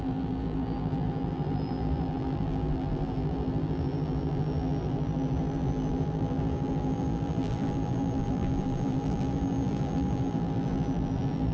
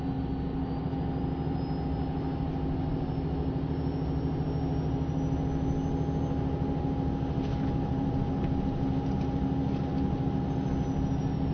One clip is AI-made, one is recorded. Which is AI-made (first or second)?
first